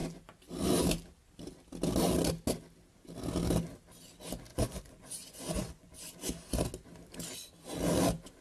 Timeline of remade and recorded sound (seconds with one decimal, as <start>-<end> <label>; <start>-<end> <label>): 0.0-4.5 recorded; 4.5-6.1 remade; 6.1-8.4 recorded